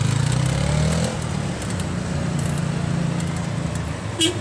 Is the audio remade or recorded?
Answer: recorded